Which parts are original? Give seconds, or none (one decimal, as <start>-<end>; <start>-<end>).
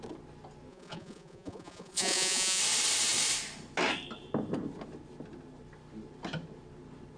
0.0-0.7; 2.6-7.2